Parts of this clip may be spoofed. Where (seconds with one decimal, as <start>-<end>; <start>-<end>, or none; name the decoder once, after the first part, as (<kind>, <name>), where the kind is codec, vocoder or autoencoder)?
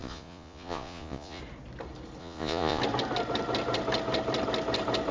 0.0-1.4 (vocoder, Vocos); 2.2-2.8